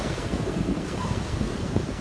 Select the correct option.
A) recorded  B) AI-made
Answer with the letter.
B